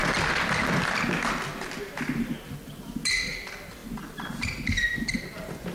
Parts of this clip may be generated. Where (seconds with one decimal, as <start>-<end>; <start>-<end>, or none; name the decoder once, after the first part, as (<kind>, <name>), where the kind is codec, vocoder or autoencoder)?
none